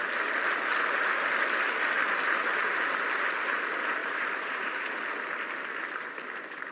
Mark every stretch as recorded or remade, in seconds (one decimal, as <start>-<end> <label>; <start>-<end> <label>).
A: 0.0-4.0 recorded; 4.0-4.9 remade; 4.9-6.7 recorded